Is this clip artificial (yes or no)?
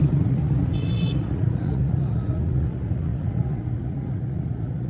yes